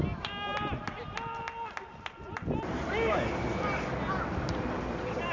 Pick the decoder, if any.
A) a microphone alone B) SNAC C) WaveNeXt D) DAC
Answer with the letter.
A